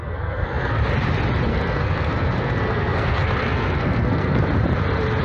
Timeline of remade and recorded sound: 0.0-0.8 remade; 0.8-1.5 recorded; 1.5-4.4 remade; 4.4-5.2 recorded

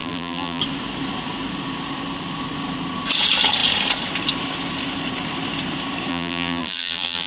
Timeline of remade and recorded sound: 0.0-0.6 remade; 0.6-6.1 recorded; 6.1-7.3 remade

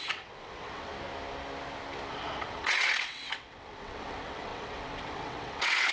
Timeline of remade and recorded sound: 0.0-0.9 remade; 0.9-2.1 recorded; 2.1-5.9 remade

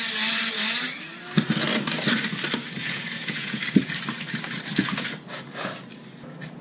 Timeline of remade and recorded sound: 0.0-2.8 recorded; 2.8-3.6 remade; 3.6-6.6 recorded

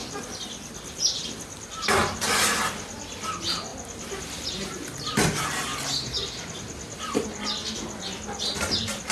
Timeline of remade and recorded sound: 0.0-9.1 recorded

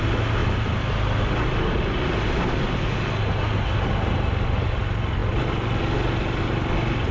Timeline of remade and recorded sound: 0.0-7.1 recorded

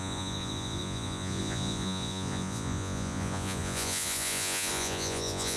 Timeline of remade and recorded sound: 0.0-5.6 remade

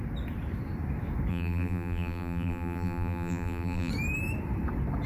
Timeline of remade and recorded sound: 0.0-1.3 recorded; 1.3-3.9 remade; 3.9-5.1 recorded